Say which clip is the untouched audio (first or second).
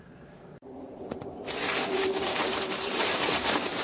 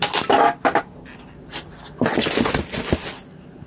second